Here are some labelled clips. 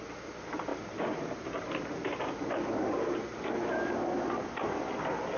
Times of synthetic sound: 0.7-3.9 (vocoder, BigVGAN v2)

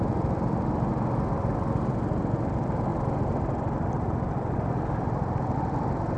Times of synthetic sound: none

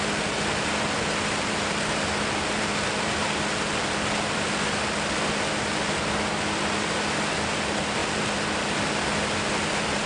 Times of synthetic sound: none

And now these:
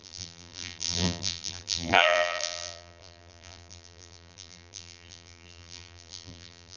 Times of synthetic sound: 0.0-6.8 (vocoder, BigVGAN v2)

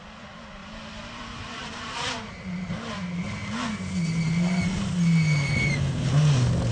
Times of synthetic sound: 0.6-2.1 (vocoder, BigVGAN v2)